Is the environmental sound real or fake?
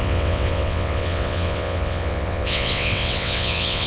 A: fake